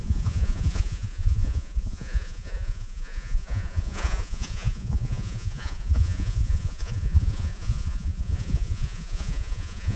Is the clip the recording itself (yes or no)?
no